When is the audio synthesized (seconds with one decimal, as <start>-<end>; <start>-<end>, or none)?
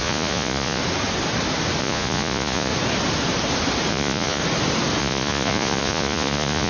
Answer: 0.0-0.8; 1.8-2.7; 3.9-4.4; 5.0-6.7